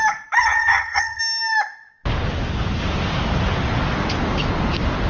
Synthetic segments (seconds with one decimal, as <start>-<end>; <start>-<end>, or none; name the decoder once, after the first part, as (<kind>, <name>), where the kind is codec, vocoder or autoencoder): 0.4-1.2 (vocoder, HiFi-GAN)